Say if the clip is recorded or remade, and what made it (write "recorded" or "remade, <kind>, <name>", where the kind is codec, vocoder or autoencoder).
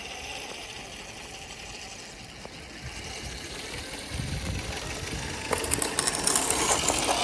recorded